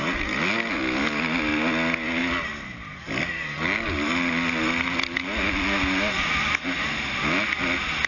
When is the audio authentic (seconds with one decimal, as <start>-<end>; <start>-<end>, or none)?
0.0-8.1